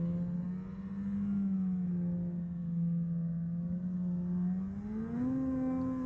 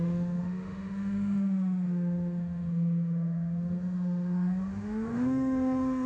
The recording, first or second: first